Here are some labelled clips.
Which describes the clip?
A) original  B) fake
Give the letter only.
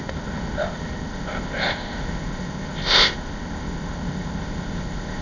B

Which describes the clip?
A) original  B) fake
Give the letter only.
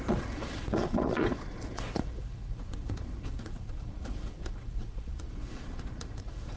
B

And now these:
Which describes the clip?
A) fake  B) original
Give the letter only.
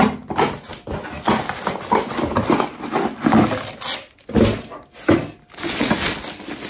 B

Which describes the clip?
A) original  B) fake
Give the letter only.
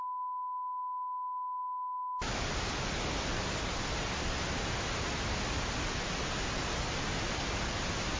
A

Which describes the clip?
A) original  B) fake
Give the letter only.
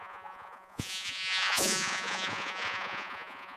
B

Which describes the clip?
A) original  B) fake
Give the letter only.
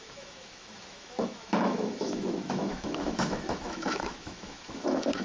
B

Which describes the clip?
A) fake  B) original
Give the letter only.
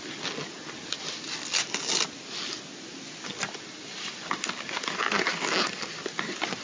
B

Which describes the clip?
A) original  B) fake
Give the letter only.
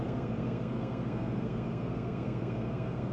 B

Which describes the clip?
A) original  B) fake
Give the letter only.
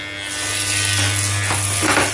A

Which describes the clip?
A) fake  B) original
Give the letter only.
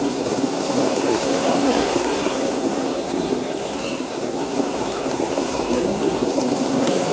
A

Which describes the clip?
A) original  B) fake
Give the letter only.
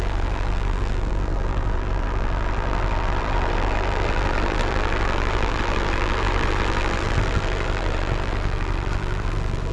B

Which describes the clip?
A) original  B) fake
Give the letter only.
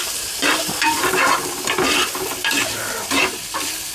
B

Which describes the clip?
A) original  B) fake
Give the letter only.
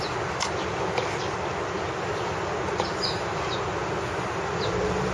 A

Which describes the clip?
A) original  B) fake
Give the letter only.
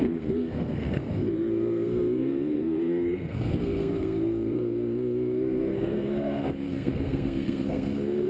B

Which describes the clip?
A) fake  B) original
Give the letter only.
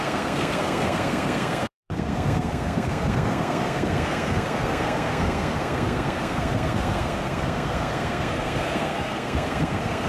A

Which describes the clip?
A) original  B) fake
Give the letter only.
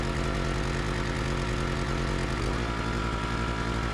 A